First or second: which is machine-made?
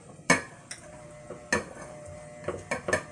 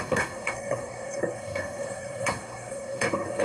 second